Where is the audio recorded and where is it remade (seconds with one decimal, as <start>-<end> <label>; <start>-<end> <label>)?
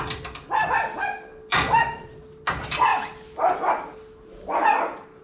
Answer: 0.0-5.2 recorded